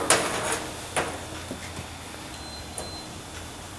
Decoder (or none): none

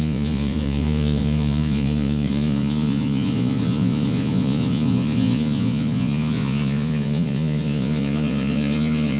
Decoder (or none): vocoder, Vocos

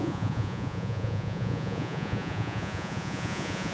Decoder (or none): vocoder, Vocos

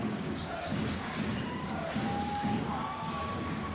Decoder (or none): codec, DAC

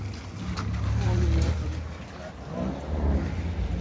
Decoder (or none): none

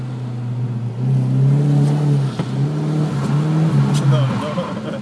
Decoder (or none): none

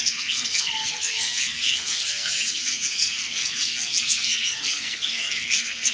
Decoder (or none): codec, SNAC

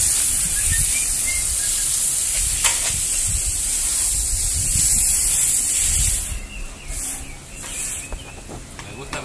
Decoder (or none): none